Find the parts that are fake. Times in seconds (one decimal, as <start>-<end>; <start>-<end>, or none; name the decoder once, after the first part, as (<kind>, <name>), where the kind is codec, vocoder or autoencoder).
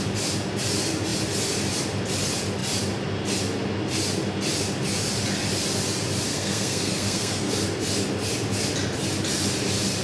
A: 6.3-7.5 (codec, SNAC)